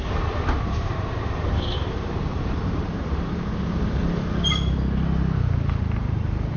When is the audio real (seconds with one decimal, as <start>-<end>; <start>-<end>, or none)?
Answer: 4.0-5.8